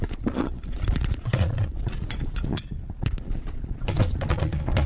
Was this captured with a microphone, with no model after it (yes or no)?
no